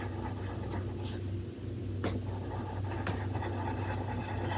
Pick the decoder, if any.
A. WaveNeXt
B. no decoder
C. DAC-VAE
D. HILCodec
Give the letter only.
B